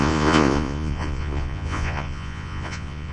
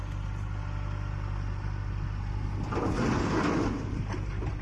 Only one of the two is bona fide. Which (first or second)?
second